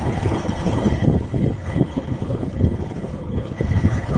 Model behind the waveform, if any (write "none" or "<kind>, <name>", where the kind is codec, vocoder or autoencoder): codec, HILCodec